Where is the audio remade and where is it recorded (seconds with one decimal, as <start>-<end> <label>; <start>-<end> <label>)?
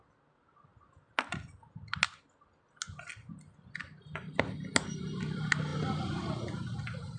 0.0-7.2 recorded